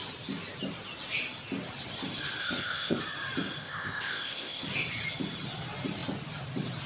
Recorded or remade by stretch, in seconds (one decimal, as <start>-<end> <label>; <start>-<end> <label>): 0.0-2.4 recorded; 2.4-3.0 remade; 3.0-3.6 recorded; 3.6-4.6 remade; 4.6-6.9 recorded